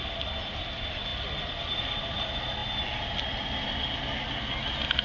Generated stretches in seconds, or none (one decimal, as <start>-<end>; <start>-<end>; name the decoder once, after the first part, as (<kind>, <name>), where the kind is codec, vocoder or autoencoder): none

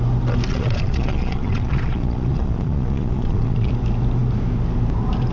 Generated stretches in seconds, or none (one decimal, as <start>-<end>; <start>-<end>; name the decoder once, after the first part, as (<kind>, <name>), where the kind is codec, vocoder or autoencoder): 0.5-3.7 (vocoder, Vocos)

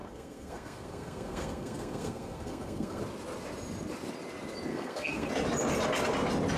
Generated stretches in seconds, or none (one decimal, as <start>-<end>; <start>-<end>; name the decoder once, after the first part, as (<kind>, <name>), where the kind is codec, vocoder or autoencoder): 0.0-3.0 (codec, SNAC); 4.7-5.3

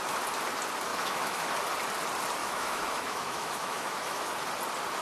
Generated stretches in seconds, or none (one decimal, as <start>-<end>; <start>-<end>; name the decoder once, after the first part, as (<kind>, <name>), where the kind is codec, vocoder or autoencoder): 0.9-1.5 (autoencoder, DAC-VAE); 2.4-4.3

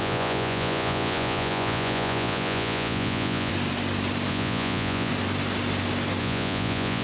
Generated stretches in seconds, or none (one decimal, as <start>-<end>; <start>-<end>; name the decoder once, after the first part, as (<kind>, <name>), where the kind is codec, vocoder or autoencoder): 0.0-3.5 (vocoder, Vocos); 4.3-5.1; 6.2-7.0